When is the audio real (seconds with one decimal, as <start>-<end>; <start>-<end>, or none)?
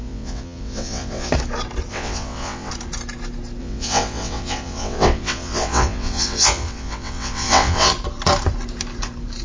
1.3-1.9; 2.7-3.6; 7.9-9.4